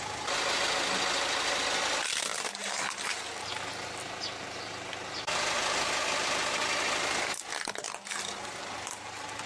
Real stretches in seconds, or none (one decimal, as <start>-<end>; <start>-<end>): 0.0-9.5